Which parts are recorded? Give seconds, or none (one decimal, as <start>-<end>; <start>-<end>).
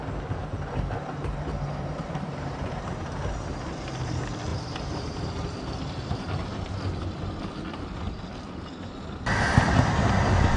0.0-0.4; 4.1-4.5; 5.6-10.6